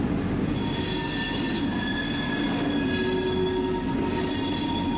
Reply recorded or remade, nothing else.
recorded